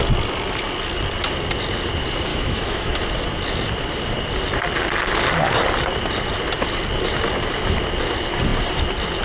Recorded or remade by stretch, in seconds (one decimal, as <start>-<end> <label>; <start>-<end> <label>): 0.0-2.3 recorded; 2.3-3.0 remade; 3.0-9.2 recorded